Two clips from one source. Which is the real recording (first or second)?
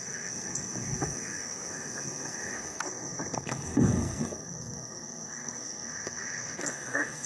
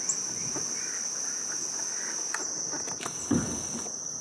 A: second